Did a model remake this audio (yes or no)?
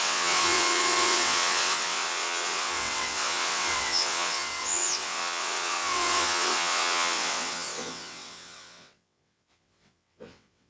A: yes